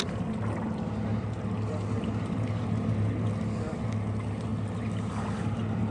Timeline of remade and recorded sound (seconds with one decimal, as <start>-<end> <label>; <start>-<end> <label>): 0.0-5.9 recorded